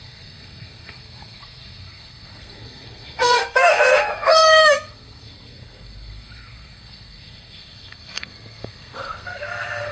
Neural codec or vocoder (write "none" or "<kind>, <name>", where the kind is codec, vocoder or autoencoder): codec, SNAC